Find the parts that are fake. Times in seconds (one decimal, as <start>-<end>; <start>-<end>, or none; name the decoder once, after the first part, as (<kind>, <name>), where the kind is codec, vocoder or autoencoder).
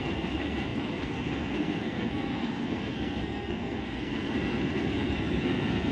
0.0-5.9 (codec, SNAC)